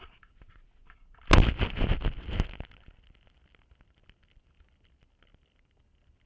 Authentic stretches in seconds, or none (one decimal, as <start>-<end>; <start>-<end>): 0.0-6.3